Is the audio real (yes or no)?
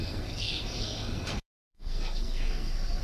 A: no